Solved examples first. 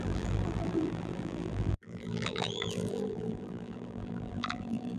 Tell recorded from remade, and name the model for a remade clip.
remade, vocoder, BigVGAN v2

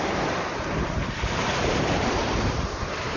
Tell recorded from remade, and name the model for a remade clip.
remade, vocoder, BigVGAN v2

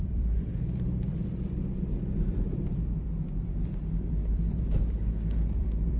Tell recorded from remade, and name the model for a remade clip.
remade, vocoder, BigVGAN v2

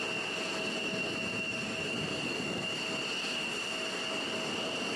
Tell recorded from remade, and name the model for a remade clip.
recorded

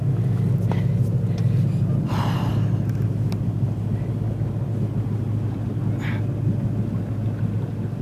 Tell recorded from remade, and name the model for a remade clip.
recorded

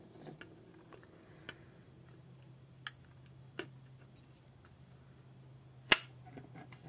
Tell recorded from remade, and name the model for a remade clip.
recorded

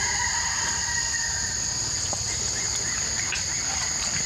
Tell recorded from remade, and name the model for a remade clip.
recorded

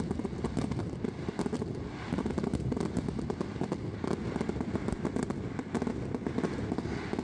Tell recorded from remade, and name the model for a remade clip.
recorded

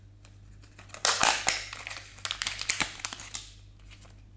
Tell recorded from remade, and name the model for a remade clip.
recorded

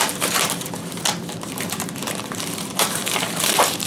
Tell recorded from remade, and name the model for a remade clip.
remade, vocoder, BigVGAN v2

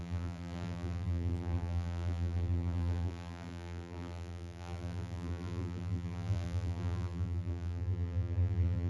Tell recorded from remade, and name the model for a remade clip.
remade, vocoder, BigVGAN v2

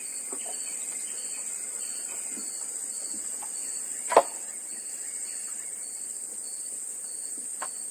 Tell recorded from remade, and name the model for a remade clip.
recorded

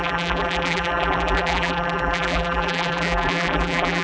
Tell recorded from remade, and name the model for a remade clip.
remade, vocoder, BigVGAN v2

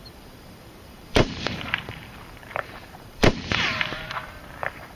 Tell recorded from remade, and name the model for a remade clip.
remade, vocoder, BigVGAN v2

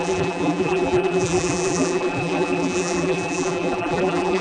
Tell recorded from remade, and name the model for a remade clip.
remade, vocoder, BigVGAN v2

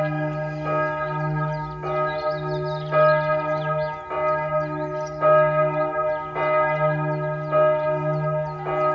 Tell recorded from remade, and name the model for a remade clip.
recorded